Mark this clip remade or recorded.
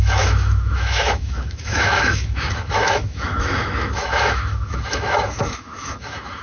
remade